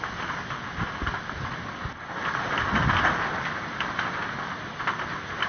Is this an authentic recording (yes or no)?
yes